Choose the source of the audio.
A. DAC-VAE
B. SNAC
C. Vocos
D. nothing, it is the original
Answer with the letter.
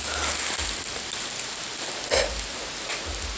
D